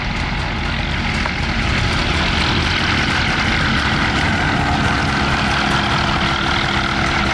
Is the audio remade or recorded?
recorded